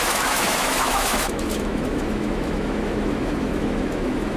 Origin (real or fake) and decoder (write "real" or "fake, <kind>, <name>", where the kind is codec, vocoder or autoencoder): fake, autoencoder, DAC-VAE